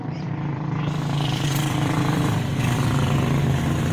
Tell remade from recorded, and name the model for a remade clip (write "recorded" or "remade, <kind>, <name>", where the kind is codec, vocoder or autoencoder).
remade, vocoder, BigVGAN v2